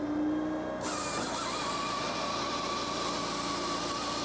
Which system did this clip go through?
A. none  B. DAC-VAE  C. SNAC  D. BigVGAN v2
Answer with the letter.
A